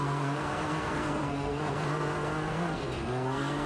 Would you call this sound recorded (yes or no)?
no